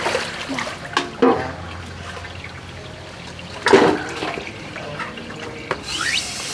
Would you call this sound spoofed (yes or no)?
no